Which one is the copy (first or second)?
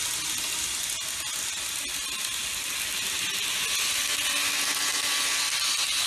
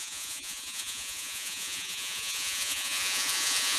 second